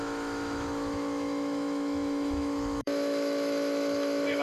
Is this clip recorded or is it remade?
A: remade